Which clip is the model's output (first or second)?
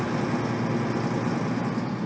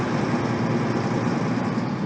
second